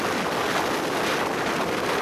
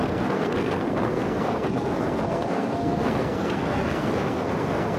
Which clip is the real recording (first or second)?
first